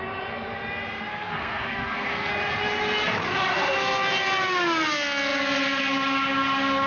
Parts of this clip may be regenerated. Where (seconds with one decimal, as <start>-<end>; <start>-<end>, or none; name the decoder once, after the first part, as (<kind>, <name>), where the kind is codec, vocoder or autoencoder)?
1.1-2.3 (codec, SNAC)